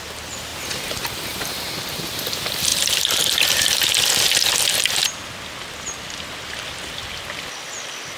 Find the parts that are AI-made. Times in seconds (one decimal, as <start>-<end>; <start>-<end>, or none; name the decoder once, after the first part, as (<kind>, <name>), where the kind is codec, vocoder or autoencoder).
none